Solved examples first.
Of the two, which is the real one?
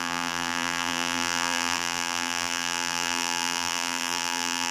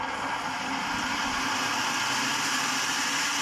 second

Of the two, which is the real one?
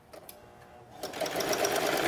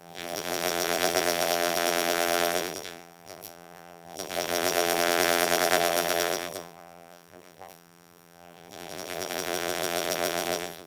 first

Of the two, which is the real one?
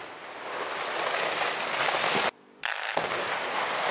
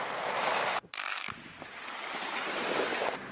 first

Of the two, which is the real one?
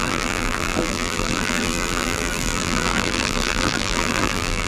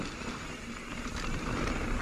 second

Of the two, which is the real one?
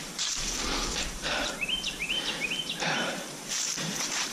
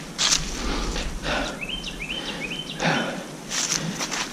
second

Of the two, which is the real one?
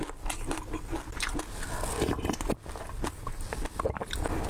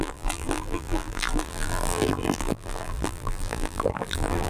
first